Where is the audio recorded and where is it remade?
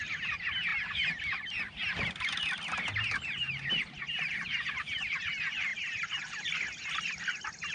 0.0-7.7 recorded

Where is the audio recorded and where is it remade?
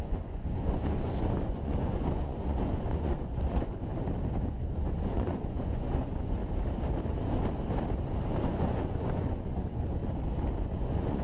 0.0-3.9 remade; 3.9-4.5 recorded; 4.5-6.4 remade; 6.4-8.4 recorded; 8.4-10.0 remade; 10.0-10.6 recorded; 10.6-11.2 remade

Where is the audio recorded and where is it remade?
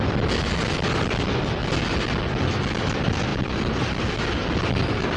0.0-5.2 recorded